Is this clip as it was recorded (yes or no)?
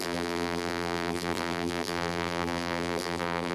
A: no